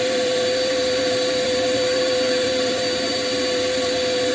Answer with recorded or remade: remade